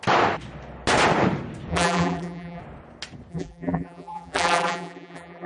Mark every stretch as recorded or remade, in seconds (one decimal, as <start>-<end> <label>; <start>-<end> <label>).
0.0-1.7 recorded; 1.7-2.6 remade; 2.6-3.3 recorded; 3.3-5.5 remade